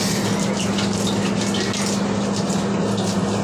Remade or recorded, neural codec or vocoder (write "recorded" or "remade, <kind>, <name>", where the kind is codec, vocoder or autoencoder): recorded